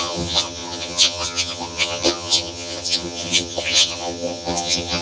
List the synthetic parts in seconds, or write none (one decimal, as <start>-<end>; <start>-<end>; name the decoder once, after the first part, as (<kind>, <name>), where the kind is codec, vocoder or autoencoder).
0.0-5.0 (vocoder, HiFi-GAN)